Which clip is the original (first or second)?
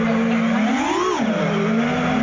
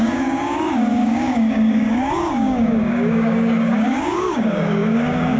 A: first